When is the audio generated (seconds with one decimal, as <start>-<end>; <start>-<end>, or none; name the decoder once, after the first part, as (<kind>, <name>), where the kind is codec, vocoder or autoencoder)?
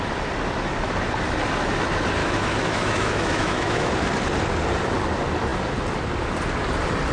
2.2-3.9 (autoencoder, DAC-VAE)